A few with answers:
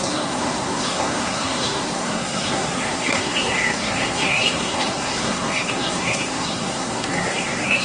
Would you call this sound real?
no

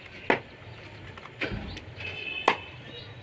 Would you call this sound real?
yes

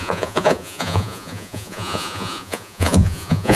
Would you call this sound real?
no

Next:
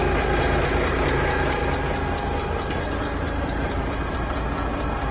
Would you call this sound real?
yes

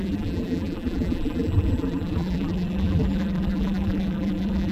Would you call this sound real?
no